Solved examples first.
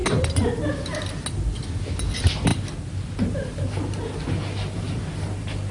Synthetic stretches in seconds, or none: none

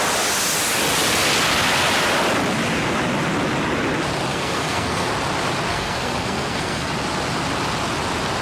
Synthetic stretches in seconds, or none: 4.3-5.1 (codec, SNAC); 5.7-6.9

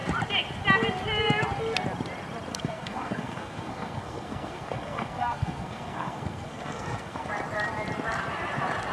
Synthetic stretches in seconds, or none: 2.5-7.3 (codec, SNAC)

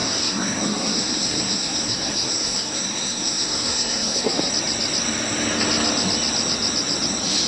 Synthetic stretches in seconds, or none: 0.0-4.5 (codec, SNAC)

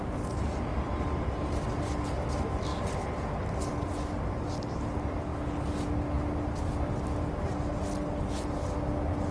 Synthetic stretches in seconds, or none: none